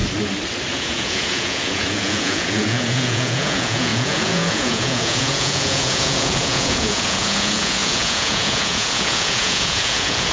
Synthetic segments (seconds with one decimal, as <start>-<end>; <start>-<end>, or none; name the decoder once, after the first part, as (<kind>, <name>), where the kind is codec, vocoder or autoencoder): 0.7-10.3 (vocoder, Vocos)